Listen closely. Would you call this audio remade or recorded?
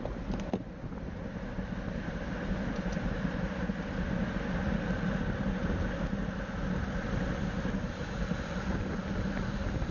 recorded